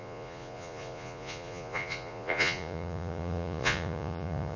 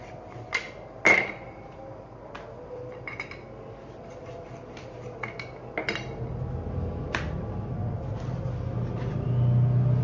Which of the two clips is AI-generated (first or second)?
first